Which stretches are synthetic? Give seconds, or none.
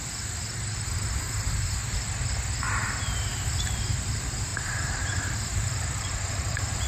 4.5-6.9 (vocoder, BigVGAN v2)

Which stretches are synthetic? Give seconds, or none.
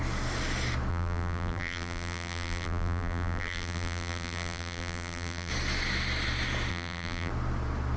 0.9-5.5 (vocoder, BigVGAN v2); 6.7-7.3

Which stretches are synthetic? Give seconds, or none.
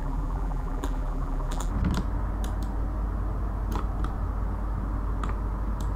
0.0-1.7 (vocoder, BigVGAN v2)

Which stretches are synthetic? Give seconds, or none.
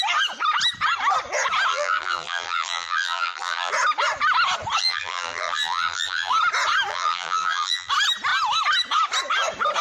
1.7-3.7 (vocoder, BigVGAN v2); 4.8-6.3; 6.9-7.9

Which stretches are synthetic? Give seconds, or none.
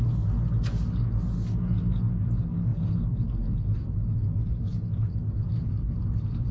2.7-6.5 (vocoder, BigVGAN v2)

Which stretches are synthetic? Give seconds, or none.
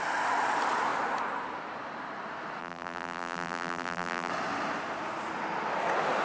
2.6-4.3 (vocoder, BigVGAN v2)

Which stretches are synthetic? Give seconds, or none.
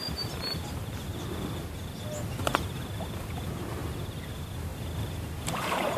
0.0-1.1 (vocoder, BigVGAN v2); 2.4-3.8; 4.3-6.0